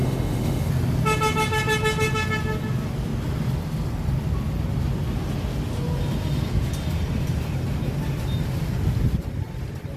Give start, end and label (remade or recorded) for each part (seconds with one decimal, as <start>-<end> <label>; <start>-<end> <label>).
0.0-0.7 remade; 0.7-10.0 recorded